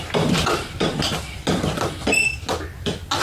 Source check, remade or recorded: recorded